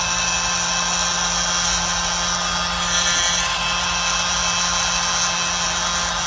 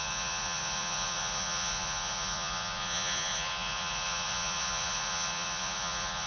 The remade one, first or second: second